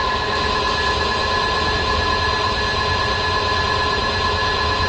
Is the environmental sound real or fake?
real